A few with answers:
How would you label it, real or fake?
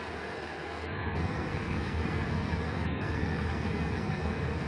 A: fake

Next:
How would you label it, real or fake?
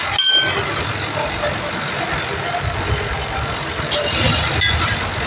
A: real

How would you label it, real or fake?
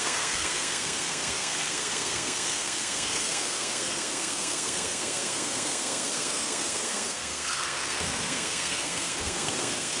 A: fake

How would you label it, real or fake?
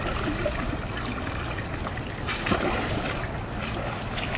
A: real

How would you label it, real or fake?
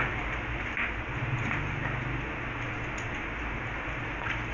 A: real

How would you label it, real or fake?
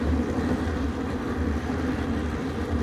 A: real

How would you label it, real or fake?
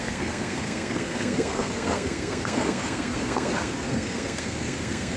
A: fake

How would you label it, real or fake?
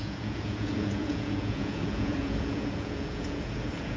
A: fake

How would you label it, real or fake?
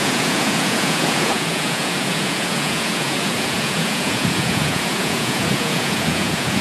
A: fake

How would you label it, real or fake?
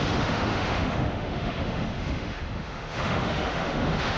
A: fake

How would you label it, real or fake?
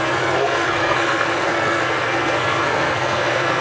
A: fake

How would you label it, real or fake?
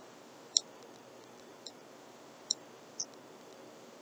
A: real